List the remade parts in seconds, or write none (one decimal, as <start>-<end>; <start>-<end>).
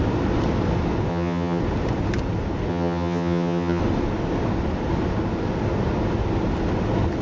1.1-1.6; 2.7-3.8